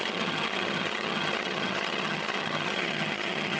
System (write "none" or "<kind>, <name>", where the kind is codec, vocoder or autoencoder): vocoder, HiFi-GAN